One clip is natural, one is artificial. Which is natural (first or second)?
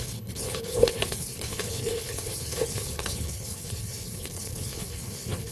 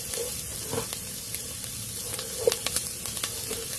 second